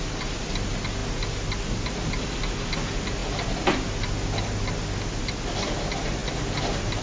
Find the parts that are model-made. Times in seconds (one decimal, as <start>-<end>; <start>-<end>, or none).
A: none